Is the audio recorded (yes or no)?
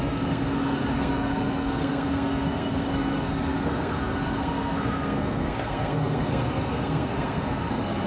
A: no